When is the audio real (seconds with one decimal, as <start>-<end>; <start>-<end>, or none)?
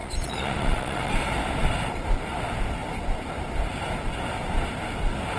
1.1-5.4